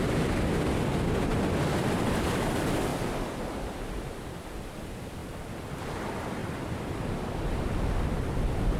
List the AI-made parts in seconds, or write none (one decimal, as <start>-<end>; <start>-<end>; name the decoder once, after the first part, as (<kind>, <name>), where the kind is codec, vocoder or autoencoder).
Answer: 0.0-1.3 (vocoder, BigVGAN v2); 2.0-2.9; 4.4-8.8